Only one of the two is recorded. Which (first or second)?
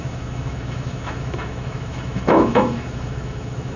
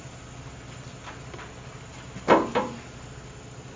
second